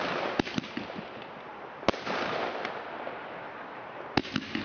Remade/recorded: recorded